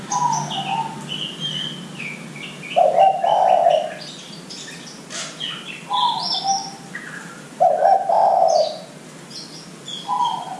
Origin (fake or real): real